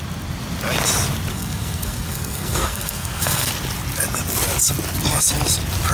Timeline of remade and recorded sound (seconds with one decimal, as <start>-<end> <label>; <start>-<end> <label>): 0.0-1.3 recorded; 1.3-3.5 remade; 3.5-5.9 recorded